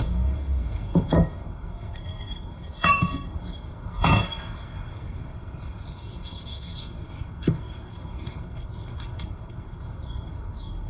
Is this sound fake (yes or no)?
yes